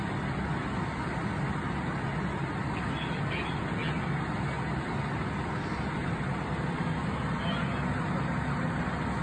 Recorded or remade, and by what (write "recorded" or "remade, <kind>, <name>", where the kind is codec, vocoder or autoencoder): recorded